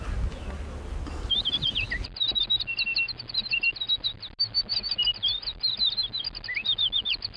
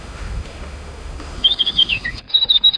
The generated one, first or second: second